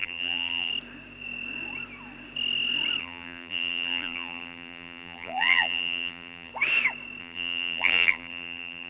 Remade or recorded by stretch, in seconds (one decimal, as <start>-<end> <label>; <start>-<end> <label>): 0.0-0.7 remade; 0.7-3.0 recorded; 3.0-6.5 remade; 6.5-7.2 recorded; 7.2-8.9 remade